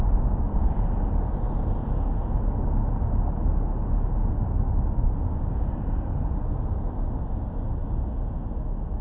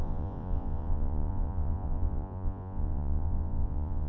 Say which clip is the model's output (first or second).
second